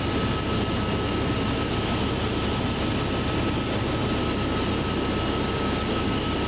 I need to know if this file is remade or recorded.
recorded